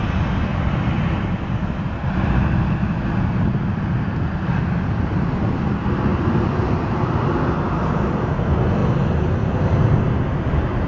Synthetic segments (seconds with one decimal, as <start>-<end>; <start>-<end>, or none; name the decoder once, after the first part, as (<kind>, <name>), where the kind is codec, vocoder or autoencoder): none